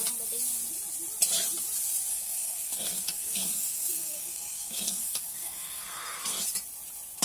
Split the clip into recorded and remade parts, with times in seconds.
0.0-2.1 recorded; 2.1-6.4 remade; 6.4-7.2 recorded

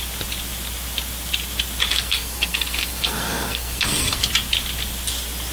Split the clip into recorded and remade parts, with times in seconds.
0.0-1.9 recorded; 1.9-4.3 remade; 4.3-5.5 recorded

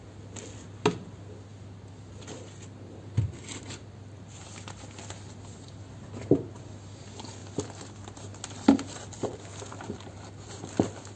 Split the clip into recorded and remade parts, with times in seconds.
0.0-11.2 recorded

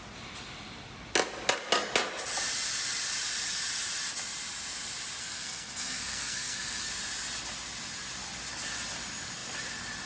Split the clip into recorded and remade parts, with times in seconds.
0.0-5.2 recorded; 5.2-6.9 remade; 6.9-10.1 recorded

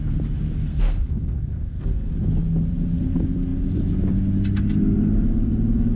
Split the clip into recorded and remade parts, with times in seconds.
0.0-0.7 recorded; 0.7-2.1 remade; 2.1-6.0 recorded

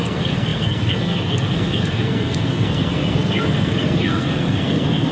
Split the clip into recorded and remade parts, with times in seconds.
0.0-5.1 remade

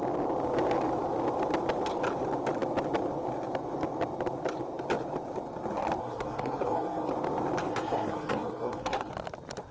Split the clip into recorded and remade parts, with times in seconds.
0.0-6.0 recorded; 6.0-7.1 remade; 7.1-7.7 recorded; 7.7-9.1 remade; 9.1-9.7 recorded

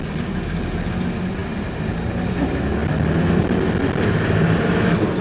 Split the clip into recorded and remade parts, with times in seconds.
0.0-5.2 recorded